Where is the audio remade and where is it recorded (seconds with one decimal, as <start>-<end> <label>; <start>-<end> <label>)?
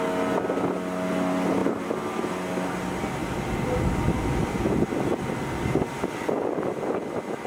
0.0-3.2 recorded; 3.2-4.6 remade; 4.6-7.5 recorded